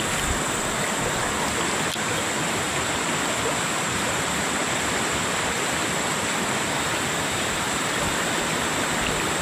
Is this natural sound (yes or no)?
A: yes